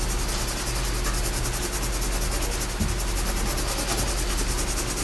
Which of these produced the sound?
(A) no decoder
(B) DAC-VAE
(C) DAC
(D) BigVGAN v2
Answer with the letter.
A